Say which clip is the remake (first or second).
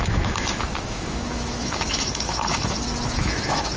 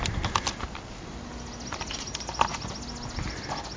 first